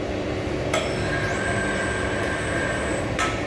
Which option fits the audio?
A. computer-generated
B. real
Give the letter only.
B